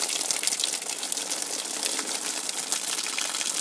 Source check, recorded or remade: recorded